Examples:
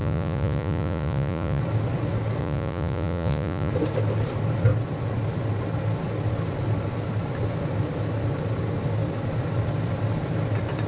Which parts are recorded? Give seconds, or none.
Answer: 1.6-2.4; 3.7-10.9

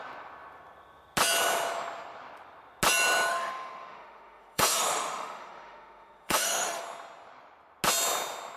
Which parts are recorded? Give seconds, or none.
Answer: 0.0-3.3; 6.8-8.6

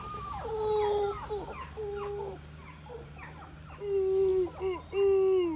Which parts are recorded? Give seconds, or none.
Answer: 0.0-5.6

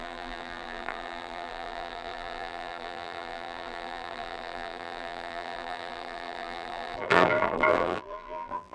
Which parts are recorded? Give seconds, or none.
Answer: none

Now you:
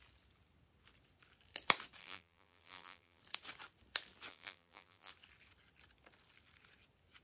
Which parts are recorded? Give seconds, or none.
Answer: 0.0-2.0; 3.2-4.3; 5.1-7.2